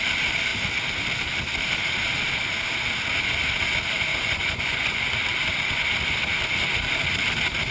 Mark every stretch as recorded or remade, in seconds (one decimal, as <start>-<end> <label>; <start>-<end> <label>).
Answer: 0.0-4.1 recorded; 4.1-5.1 remade; 5.1-7.7 recorded